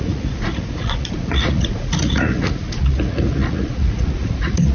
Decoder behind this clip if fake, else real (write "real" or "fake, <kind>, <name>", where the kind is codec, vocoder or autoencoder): fake, vocoder, Vocos